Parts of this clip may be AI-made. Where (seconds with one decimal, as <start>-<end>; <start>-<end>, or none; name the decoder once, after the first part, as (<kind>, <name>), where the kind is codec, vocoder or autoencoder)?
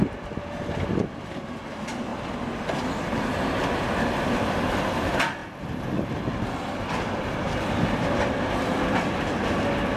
none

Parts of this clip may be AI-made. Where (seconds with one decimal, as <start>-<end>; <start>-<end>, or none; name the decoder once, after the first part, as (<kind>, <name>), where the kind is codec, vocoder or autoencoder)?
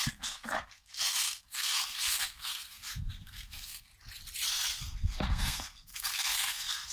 0.0-3.9 (codec, SNAC); 4.5-6.9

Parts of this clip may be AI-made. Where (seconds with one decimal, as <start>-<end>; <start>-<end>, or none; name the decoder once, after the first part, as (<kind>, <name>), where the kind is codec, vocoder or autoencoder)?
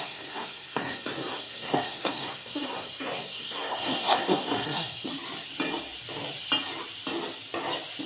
0.0-5.1 (codec, SNAC)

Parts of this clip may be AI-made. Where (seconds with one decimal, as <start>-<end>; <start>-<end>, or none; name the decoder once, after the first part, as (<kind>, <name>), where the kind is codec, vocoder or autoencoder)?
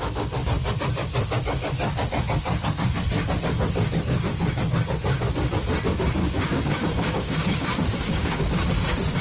6.2-8.4 (codec, DAC)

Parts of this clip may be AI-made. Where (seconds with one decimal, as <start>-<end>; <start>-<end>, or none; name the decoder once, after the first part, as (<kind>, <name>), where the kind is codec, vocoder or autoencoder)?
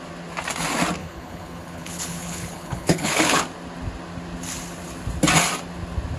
1.0-3.4 (codec, HILCodec)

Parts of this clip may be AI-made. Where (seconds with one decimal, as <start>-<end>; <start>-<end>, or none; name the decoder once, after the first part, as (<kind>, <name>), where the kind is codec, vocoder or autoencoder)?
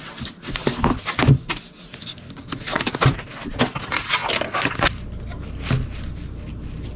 none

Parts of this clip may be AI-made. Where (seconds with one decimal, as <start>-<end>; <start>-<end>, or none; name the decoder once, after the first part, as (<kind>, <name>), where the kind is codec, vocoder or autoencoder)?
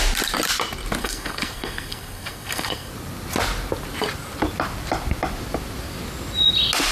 1.0-2.9 (codec, SNAC)